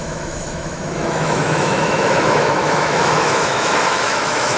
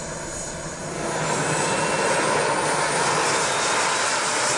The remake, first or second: first